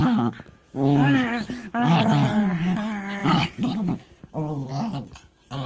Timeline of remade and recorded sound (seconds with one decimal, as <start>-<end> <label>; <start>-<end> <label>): 0.0-1.9 remade; 1.9-3.2 recorded; 3.2-4.1 remade; 4.1-5.7 recorded